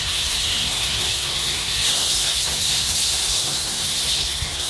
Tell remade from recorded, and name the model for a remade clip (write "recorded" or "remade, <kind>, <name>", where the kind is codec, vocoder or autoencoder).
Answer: remade, codec, SNAC